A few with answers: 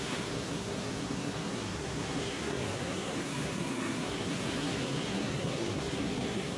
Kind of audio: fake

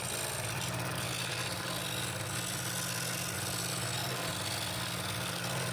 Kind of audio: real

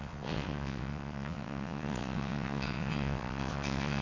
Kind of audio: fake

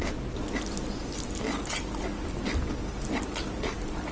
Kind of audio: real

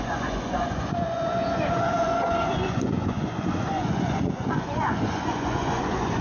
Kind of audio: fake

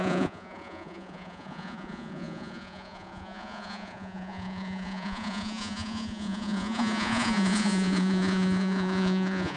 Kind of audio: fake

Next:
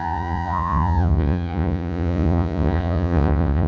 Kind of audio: fake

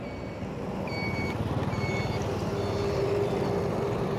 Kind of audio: real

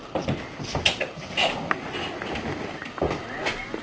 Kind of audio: real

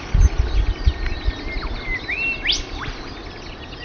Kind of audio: real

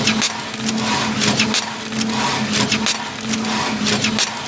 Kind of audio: real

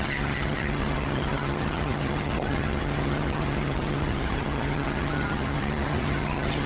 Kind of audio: fake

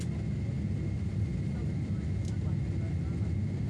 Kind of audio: real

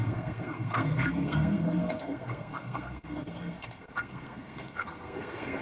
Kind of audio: fake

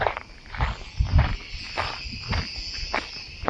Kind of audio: real